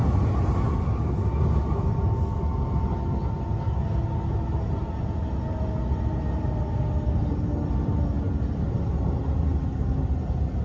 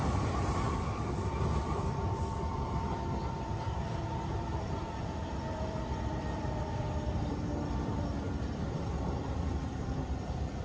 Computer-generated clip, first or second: second